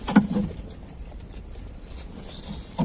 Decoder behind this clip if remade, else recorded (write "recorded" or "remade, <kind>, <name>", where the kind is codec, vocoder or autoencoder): remade, vocoder, BigVGAN v2